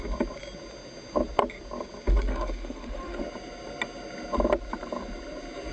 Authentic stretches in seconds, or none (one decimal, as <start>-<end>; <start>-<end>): 0.0-2.3; 3.2-5.7